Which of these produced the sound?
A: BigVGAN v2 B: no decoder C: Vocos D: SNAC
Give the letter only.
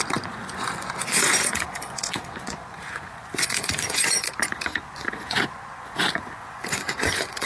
C